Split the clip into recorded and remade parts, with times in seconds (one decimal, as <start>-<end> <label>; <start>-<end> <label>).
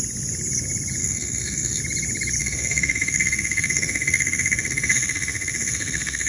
0.0-1.0 recorded; 1.0-1.8 remade; 1.8-2.4 recorded; 2.4-6.3 remade